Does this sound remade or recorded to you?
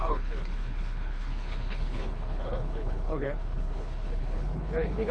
remade